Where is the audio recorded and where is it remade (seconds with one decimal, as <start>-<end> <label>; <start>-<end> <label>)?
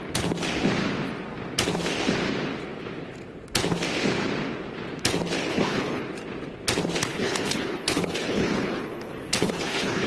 0.0-5.5 recorded; 5.5-6.0 remade; 6.0-7.1 recorded; 7.1-10.1 remade